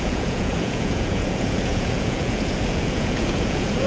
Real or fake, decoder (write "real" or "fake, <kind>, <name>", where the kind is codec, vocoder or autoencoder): fake, vocoder, Vocos